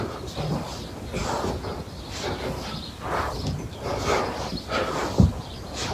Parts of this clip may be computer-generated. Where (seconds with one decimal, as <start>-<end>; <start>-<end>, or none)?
none